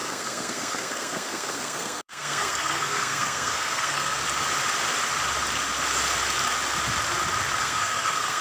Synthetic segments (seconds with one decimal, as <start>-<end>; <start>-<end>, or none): 0.0-4.2; 7.6-8.4